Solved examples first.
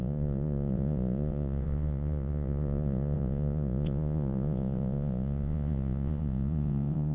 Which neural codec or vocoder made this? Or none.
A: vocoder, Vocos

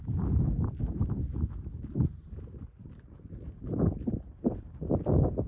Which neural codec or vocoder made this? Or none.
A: none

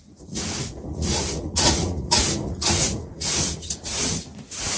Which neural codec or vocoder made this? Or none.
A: vocoder, Vocos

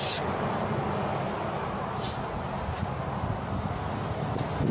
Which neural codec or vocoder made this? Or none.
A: none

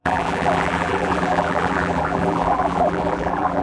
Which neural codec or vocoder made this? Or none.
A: vocoder, BigVGAN v2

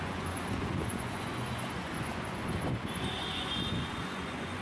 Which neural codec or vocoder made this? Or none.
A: vocoder, Vocos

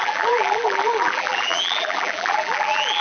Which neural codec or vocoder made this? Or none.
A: vocoder, BigVGAN v2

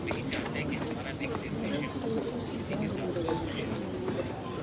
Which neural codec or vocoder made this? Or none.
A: none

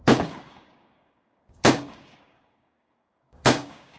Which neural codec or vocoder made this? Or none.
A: codec, DAC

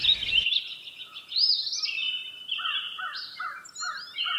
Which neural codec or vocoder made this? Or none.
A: none